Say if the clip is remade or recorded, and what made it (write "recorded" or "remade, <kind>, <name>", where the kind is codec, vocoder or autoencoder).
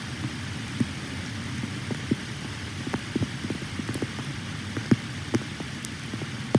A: remade, vocoder, BigVGAN v2